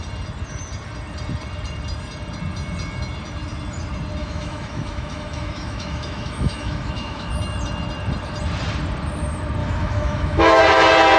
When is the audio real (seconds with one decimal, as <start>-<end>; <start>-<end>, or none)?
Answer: 0.0-4.2; 7.3-9.6; 10.6-11.2